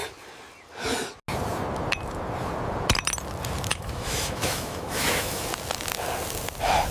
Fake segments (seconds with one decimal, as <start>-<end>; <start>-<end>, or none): 3.7-5.4